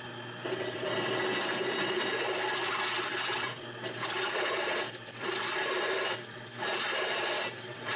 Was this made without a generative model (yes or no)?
yes